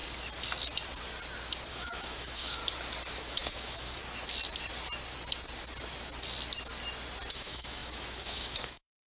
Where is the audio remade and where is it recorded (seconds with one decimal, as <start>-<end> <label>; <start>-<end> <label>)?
0.0-1.7 recorded; 1.7-2.6 remade; 2.6-3.2 recorded; 3.2-4.0 remade; 4.0-7.3 recorded; 7.3-9.1 remade